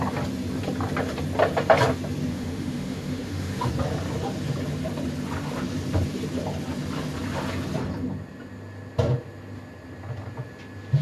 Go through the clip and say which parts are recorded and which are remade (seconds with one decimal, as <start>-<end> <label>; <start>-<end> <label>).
0.0-2.3 recorded; 2.3-3.7 remade; 3.7-11.0 recorded